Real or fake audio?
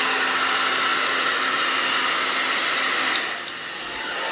real